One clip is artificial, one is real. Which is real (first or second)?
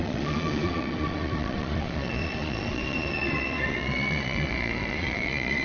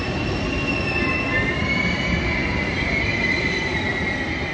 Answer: second